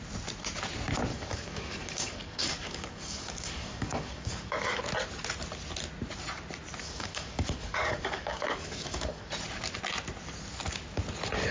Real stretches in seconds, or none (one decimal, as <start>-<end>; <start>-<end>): 0.0-1.1; 4.8-6.8; 9.3-11.5